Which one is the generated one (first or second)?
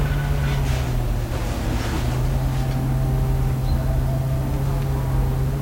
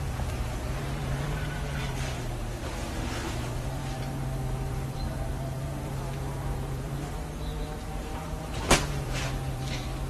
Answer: second